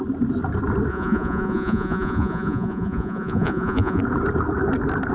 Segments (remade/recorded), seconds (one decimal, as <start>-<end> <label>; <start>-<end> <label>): 0.0-0.9 recorded; 0.9-4.0 remade; 4.0-5.1 recorded